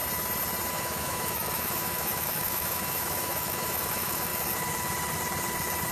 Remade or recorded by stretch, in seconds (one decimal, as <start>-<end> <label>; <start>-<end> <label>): 0.0-0.7 recorded; 0.7-4.3 remade; 4.3-5.9 recorded